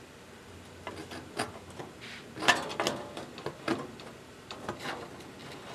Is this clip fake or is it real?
real